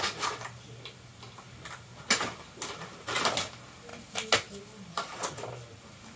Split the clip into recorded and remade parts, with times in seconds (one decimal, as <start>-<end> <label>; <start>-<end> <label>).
0.0-6.2 recorded